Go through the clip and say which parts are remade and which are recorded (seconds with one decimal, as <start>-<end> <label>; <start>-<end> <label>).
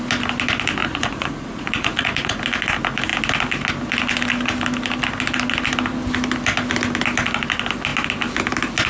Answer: 0.0-0.8 recorded; 0.8-2.4 remade; 2.4-8.9 recorded